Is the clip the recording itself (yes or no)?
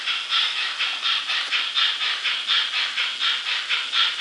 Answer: yes